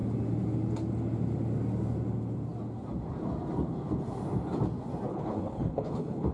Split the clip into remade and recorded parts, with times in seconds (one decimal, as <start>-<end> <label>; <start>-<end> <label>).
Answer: 0.0-5.1 recorded; 5.1-6.3 remade